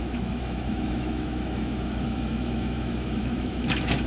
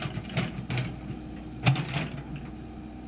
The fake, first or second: first